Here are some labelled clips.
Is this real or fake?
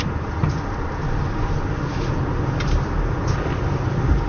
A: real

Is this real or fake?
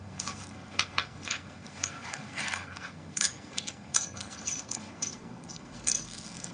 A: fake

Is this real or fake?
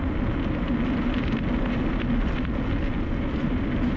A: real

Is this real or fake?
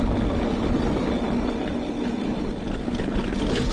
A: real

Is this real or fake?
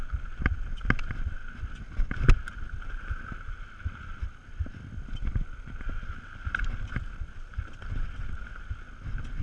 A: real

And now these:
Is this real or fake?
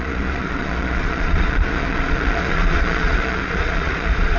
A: fake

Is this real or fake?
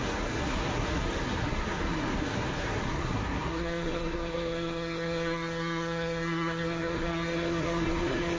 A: fake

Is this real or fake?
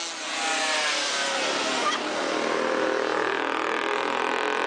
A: real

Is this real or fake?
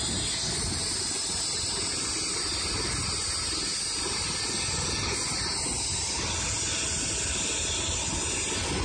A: real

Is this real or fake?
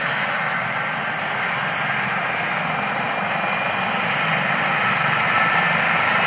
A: real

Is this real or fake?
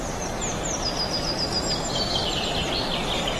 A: real